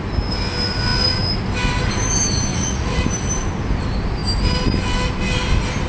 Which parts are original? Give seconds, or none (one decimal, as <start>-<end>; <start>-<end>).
0.0-2.5; 3.0-5.9